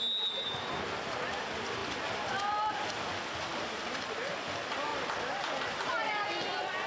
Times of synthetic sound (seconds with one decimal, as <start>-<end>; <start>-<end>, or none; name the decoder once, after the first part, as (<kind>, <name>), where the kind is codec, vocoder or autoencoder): none